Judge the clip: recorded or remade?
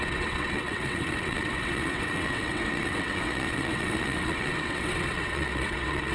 remade